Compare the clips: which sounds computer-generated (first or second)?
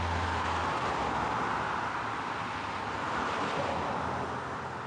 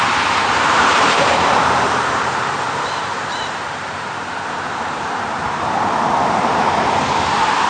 second